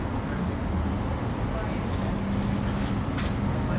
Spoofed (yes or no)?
no